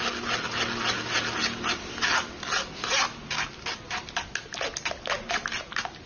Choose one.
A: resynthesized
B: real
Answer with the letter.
B